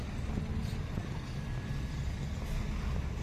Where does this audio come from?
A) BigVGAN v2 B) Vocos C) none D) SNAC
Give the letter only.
C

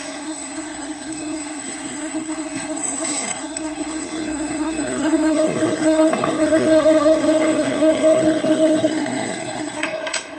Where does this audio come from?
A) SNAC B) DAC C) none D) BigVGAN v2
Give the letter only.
A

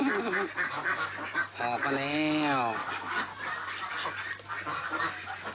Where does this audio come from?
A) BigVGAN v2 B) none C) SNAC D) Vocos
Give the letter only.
B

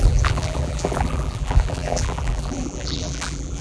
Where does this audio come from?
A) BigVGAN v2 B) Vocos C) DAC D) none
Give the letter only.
A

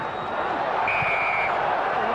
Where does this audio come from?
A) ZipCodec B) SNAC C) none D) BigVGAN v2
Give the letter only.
C